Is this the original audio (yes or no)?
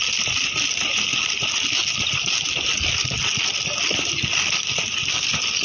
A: yes